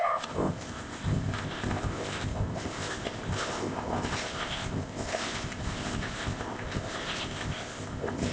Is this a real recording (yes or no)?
no